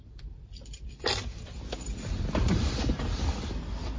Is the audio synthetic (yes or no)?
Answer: yes